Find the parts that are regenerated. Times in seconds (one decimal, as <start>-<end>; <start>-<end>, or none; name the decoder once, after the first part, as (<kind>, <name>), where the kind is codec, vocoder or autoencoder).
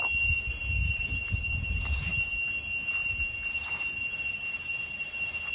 0.8-1.7 (vocoder, BigVGAN v2); 2.1-5.5